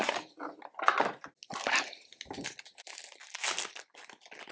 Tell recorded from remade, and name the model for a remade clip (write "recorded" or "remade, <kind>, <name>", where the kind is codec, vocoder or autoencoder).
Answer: recorded